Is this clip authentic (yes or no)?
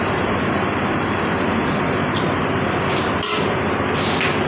yes